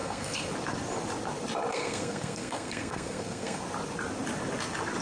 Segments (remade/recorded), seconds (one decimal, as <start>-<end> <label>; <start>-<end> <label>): 0.0-0.5 remade; 0.5-1.7 recorded; 1.7-3.6 remade; 3.6-5.0 recorded

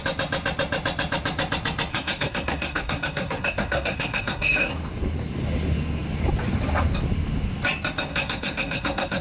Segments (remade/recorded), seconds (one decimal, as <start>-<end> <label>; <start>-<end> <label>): 0.0-1.9 recorded; 1.9-4.7 remade; 4.7-8.1 recorded; 8.1-9.2 remade